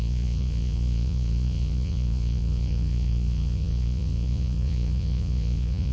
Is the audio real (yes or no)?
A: no